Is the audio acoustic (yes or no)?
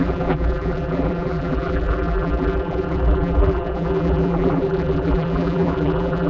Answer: no